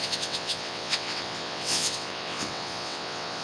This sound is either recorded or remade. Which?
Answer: remade